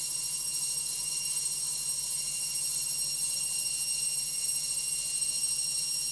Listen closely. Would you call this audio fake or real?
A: real